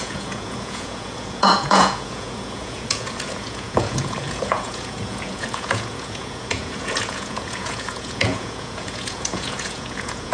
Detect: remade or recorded remade